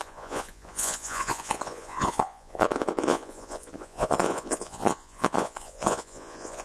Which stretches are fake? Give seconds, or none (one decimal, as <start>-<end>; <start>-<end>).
0.0-6.6